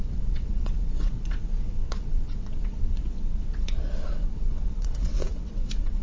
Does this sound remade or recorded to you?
remade